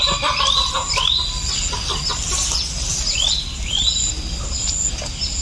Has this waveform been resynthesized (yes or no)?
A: no